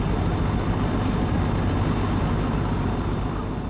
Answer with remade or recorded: recorded